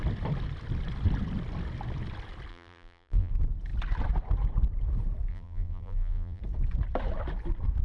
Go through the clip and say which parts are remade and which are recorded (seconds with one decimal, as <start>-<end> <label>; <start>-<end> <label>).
0.0-2.5 recorded; 2.5-3.3 remade; 3.3-5.3 recorded; 5.3-6.4 remade; 6.4-7.8 recorded